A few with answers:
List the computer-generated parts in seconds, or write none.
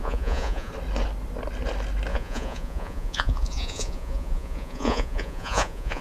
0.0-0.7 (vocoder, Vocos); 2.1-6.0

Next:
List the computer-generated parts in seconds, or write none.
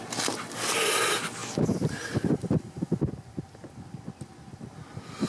none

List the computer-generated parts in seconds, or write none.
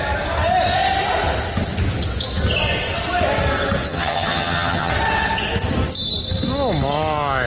3.9-4.9 (vocoder, HiFi-GAN)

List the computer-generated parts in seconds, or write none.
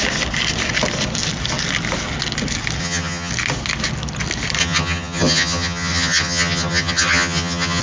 2.8-3.3 (vocoder, HiFi-GAN); 4.6-7.8